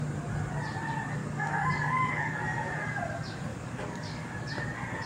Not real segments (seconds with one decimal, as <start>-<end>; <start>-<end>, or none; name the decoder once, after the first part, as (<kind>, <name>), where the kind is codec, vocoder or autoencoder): 1.2-2.4 (codec, DAC); 3.5-4.3